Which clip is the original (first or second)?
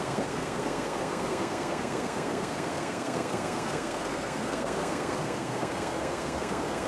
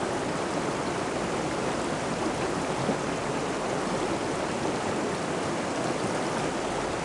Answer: second